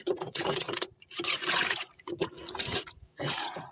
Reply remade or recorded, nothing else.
remade